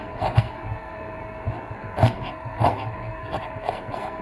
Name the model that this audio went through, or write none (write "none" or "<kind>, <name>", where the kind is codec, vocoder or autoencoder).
codec, SNAC